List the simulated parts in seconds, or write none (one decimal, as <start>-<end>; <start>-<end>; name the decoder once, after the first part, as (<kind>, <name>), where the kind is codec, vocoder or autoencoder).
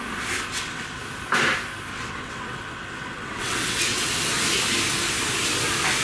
0.5-1.0 (vocoder, WaveNeXt); 1.9-4.1